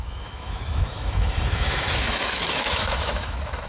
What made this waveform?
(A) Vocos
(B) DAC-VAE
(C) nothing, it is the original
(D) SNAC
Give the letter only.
B